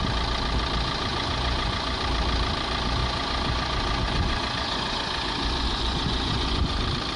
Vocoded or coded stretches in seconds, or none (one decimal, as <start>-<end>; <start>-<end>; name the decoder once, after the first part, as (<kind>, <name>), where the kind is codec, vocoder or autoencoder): 1.1-2.0 (vocoder, Vocos); 3.0-6.8